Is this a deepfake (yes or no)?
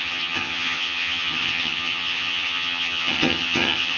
yes